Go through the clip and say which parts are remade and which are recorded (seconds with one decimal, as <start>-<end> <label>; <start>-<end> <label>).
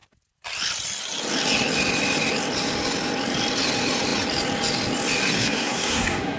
0.0-5.4 recorded; 5.4-6.4 remade